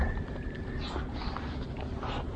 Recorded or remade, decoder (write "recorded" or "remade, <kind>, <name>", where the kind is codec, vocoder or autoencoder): recorded